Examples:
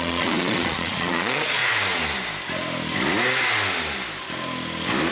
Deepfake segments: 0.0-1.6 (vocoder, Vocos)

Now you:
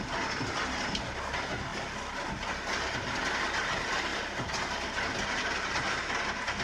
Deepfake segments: none

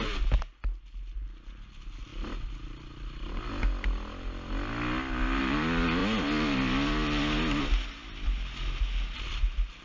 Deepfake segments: none